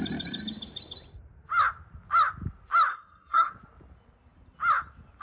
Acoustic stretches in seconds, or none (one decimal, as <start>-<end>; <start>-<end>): 0.0-2.9; 3.5-5.2